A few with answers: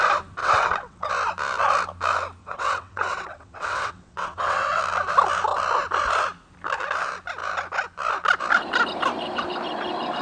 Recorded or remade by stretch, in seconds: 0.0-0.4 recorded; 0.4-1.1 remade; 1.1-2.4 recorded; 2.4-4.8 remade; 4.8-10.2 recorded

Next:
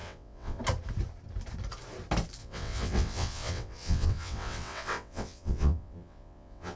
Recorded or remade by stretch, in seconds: 0.0-0.6 remade; 0.6-2.4 recorded; 2.4-6.8 remade

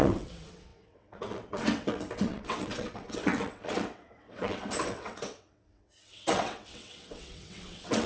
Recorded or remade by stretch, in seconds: 0.0-8.1 remade

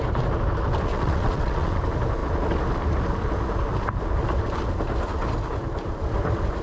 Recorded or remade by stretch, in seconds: 0.0-0.9 recorded; 0.9-1.8 remade; 1.8-6.6 recorded